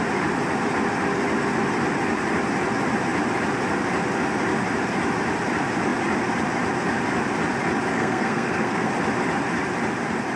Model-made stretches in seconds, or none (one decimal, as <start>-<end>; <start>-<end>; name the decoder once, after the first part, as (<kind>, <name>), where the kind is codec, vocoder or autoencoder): 7.9-8.9 (codec, SNAC)